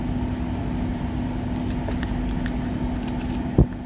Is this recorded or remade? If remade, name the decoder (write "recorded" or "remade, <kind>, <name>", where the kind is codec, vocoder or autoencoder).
recorded